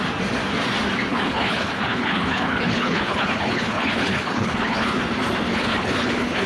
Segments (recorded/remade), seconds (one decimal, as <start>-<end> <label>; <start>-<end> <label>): 0.0-1.1 recorded; 1.1-5.0 remade; 5.0-5.5 recorded; 5.5-6.5 remade